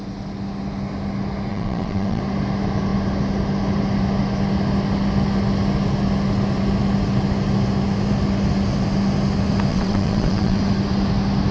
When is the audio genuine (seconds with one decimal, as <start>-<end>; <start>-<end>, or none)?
0.0-1.5; 2.2-9.7; 10.6-11.5